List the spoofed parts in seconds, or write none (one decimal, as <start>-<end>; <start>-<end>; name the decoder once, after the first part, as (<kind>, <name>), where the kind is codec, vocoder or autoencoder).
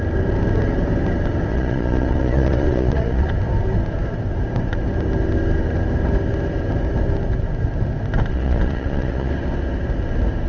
1.5-3.3 (vocoder, Vocos); 8.3-9.3